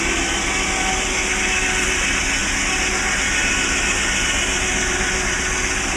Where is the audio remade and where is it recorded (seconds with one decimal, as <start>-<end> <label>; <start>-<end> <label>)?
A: 0.0-6.0 recorded